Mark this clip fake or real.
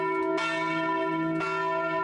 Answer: real